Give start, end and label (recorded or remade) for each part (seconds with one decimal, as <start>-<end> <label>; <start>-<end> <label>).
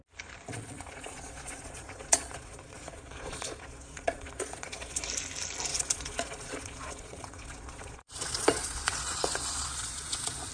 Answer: 0.0-0.5 recorded; 0.5-5.0 remade; 5.0-5.7 recorded; 5.7-10.5 remade